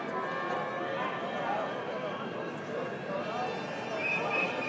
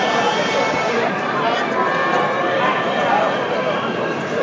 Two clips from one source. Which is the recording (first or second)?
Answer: first